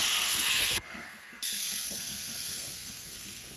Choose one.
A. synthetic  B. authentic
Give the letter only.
A